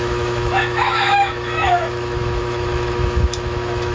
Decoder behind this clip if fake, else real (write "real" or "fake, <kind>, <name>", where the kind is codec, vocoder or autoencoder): fake, autoencoder, DAC-VAE